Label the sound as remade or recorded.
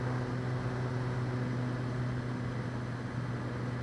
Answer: recorded